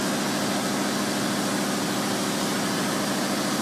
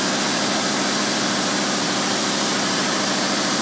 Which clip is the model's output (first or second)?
second